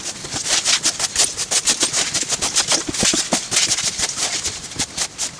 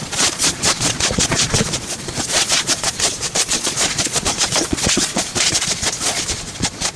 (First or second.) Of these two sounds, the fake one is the second